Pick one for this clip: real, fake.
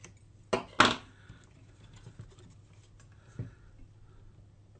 real